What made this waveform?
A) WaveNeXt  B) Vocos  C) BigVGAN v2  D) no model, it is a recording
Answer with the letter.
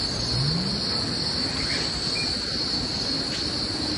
D